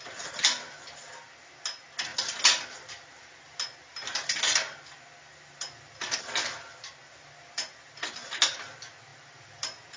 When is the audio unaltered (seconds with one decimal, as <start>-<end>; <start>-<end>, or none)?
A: 0.0-10.0